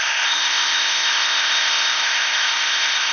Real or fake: fake